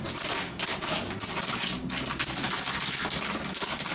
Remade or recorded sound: recorded